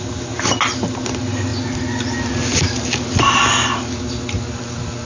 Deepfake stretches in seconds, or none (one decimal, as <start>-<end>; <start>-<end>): none